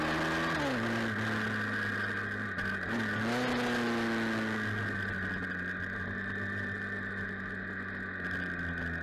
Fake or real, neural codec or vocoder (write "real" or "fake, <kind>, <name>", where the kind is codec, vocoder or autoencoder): real